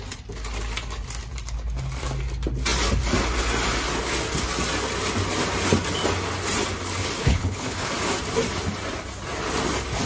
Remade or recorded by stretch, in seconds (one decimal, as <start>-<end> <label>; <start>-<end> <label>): 0.0-7.2 recorded; 7.2-7.9 remade; 7.9-10.1 recorded